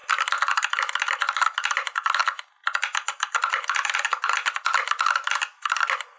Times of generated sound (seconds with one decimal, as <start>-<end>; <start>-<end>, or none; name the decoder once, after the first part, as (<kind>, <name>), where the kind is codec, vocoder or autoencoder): none